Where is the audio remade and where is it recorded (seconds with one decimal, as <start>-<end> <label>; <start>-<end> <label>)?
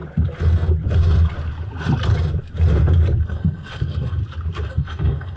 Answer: 0.0-3.2 recorded; 3.2-4.2 remade; 4.2-4.7 recorded; 4.7-5.4 remade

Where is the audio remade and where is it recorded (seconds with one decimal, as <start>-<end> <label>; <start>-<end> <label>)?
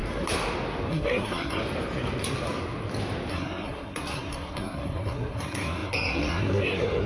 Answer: 0.0-0.9 recorded; 0.9-1.6 remade; 1.6-3.3 recorded; 3.3-7.1 remade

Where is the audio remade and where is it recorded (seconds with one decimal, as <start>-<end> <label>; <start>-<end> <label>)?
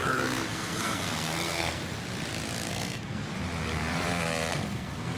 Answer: 0.0-1.8 remade; 1.8-2.7 recorded; 2.7-3.3 remade; 3.3-4.5 recorded; 4.5-5.2 remade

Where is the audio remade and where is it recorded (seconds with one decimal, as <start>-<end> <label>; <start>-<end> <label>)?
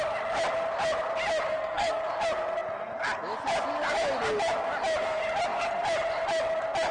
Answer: 0.0-1.5 recorded; 1.5-2.0 remade; 2.0-6.9 recorded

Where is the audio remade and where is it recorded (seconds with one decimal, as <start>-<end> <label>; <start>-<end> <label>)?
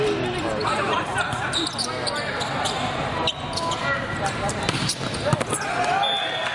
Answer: 0.0-6.5 recorded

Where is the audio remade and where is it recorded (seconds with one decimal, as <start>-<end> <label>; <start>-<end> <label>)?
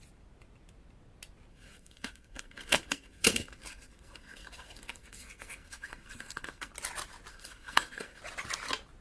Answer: 0.0-1.5 recorded; 1.5-6.7 remade; 6.7-7.3 recorded; 7.3-8.2 remade; 8.2-9.0 recorded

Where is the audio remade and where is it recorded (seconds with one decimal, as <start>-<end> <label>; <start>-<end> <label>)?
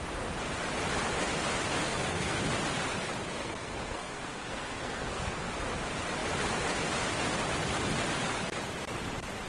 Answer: 0.0-1.8 recorded; 1.8-2.4 remade; 2.4-3.4 recorded; 3.4-5.5 remade; 5.5-9.5 recorded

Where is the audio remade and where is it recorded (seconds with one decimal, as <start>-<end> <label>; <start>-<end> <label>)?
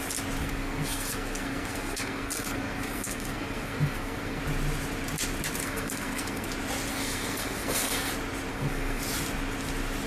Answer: 0.0-0.4 recorded; 0.4-4.4 remade; 4.4-5.6 recorded; 5.6-6.5 remade; 6.5-6.9 recorded; 6.9-8.1 remade; 8.1-8.5 recorded; 8.5-9.0 remade; 9.0-10.1 recorded